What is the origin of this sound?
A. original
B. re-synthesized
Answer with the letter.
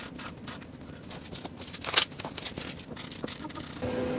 A